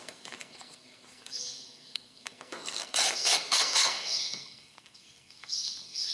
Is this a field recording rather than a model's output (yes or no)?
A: no